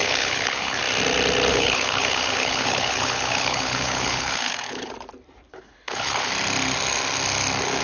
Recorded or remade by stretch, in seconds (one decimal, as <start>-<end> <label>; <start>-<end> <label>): 0.0-0.8 remade; 0.8-1.5 recorded; 1.5-4.9 remade; 4.9-5.5 recorded; 5.5-6.3 remade; 6.3-7.8 recorded